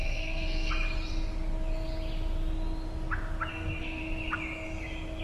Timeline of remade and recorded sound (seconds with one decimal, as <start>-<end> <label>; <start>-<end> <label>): 0.0-0.7 remade; 0.7-3.5 recorded; 3.5-4.0 remade; 4.0-5.2 recorded

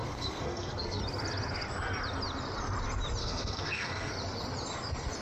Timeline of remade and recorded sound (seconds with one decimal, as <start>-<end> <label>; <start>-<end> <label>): 0.0-1.0 remade; 1.0-3.2 recorded; 3.2-4.1 remade; 4.1-5.2 recorded